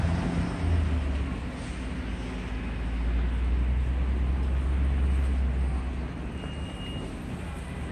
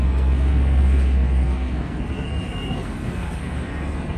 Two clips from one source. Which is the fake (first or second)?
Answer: second